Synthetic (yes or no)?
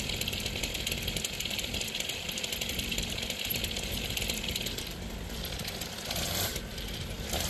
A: yes